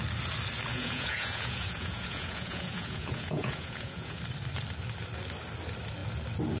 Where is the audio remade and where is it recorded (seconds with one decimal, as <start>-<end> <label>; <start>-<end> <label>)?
0.0-0.7 recorded; 0.7-4.2 remade; 4.2-6.6 recorded